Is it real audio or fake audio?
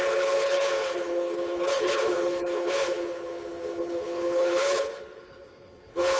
fake